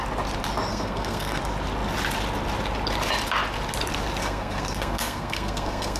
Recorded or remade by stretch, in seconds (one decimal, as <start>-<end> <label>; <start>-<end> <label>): 0.0-0.7 recorded; 0.7-1.4 remade; 1.4-4.2 recorded; 4.2-6.0 remade